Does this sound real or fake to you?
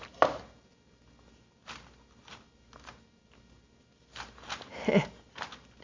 real